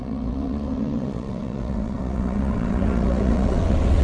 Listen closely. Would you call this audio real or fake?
fake